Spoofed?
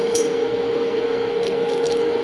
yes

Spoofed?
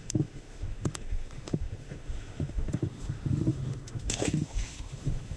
yes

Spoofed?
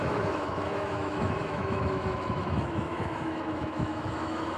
yes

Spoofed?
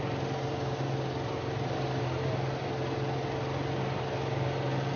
no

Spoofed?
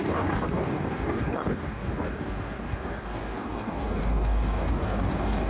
yes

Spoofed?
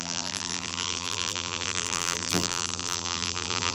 yes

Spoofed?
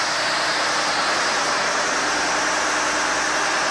no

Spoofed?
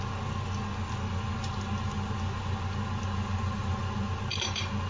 no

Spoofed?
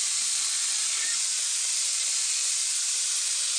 no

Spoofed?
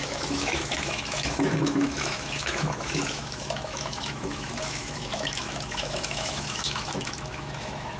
yes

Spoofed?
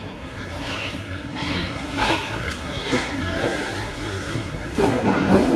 yes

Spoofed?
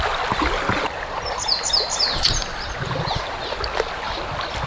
no